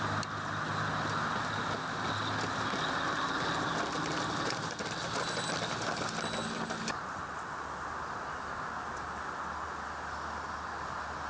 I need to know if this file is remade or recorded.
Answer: recorded